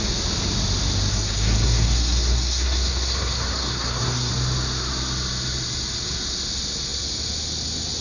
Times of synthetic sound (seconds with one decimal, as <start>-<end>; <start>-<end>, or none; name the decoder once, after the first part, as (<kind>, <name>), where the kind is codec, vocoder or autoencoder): 1.1-4.3 (codec, SNAC)